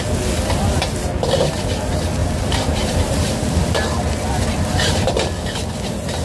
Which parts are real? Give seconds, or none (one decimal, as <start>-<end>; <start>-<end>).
0.0-2.2; 5.1-6.2